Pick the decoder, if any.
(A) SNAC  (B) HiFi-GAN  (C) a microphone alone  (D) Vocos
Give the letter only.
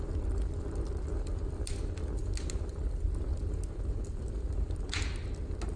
C